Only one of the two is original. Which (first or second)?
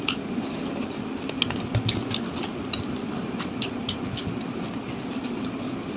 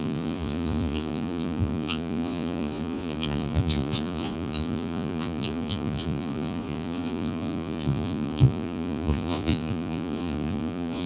first